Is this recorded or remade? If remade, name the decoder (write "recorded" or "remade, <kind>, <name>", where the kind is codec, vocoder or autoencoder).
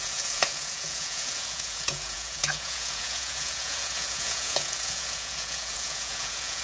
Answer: remade, vocoder, Vocos